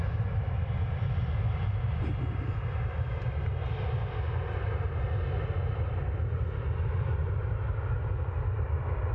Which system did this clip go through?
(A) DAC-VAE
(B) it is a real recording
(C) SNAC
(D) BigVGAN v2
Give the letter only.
B